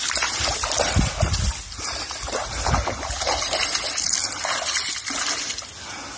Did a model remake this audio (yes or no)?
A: no